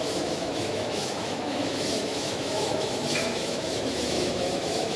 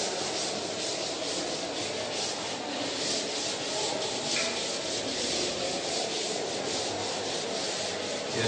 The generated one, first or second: first